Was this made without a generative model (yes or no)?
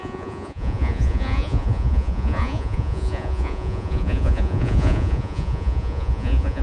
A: no